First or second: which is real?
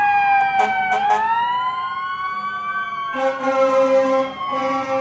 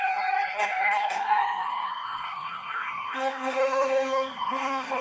first